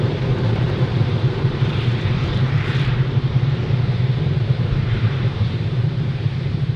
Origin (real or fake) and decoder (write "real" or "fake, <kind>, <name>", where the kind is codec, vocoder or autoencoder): fake, vocoder, BigVGAN v2